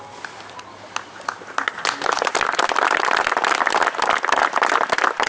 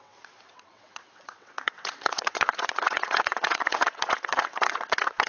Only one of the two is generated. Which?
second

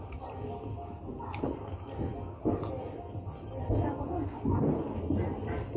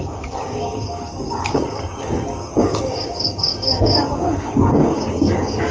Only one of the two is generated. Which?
second